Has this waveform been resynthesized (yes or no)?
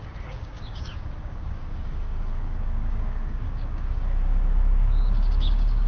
yes